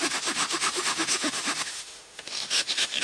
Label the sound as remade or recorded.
remade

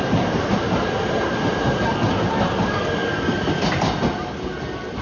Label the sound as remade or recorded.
recorded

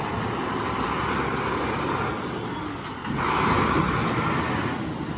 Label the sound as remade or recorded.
recorded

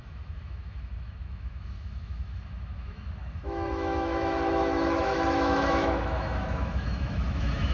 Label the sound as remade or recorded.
remade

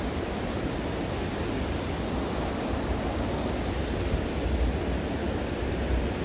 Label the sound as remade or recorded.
recorded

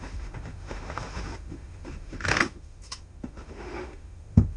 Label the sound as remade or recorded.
remade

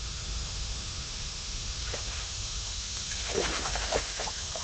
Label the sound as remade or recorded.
remade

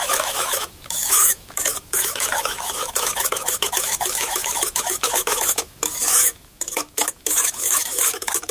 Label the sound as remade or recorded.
remade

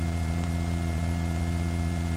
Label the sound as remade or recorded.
recorded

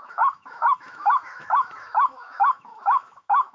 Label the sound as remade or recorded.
remade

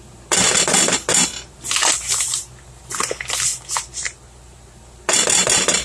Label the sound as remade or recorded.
recorded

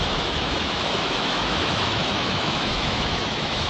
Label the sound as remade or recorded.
remade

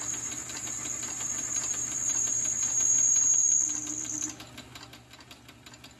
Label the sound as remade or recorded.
recorded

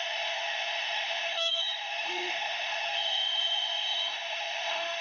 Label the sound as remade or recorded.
remade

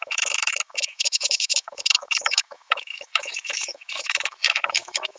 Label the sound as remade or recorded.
remade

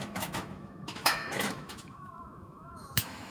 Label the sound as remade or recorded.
remade